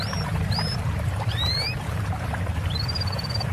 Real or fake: fake